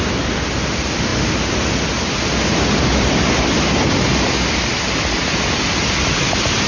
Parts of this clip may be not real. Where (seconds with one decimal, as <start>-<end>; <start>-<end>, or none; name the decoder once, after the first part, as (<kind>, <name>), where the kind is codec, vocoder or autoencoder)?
none